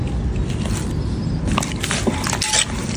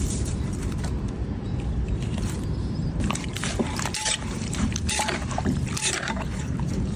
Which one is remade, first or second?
second